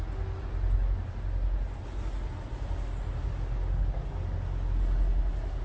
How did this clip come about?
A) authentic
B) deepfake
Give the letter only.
A